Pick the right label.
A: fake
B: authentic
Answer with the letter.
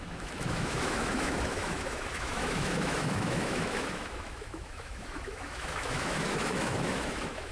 A